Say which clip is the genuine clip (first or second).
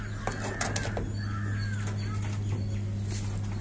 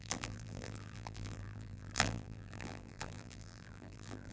first